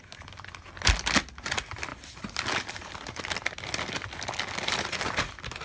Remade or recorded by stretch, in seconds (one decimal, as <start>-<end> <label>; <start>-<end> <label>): 0.0-5.6 recorded